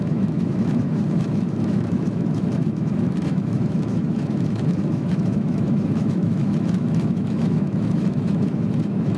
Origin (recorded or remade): remade